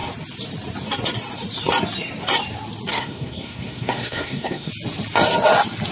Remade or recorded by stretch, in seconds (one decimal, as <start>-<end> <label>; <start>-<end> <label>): 0.0-2.9 recorded; 2.9-4.7 remade; 4.7-5.9 recorded